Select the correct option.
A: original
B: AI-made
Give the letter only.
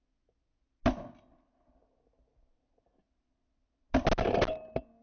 A